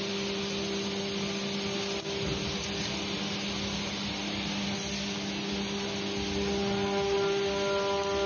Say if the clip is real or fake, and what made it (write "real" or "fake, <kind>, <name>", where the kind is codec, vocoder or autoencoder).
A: real